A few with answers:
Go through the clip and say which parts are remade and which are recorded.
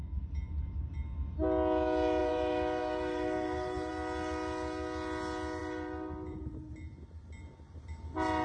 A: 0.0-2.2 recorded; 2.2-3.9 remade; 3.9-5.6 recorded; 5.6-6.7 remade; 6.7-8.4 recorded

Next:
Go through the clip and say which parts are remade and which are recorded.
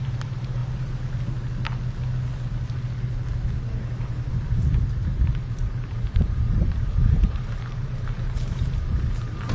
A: 0.0-0.6 remade; 0.6-4.3 recorded; 4.3-9.5 remade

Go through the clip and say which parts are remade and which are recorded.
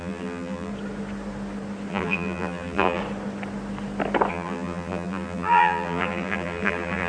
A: 0.0-0.7 remade; 0.7-1.9 recorded; 1.9-3.0 remade; 3.0-4.3 recorded; 4.3-7.1 remade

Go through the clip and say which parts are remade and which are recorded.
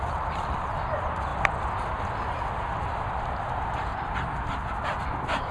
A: 0.0-3.9 recorded; 3.9-4.5 remade; 4.5-5.5 recorded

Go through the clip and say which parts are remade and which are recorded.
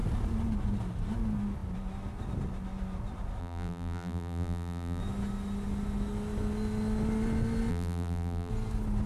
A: 0.0-3.4 recorded; 3.4-5.0 remade; 5.0-7.7 recorded; 7.7-8.5 remade; 8.5-9.1 recorded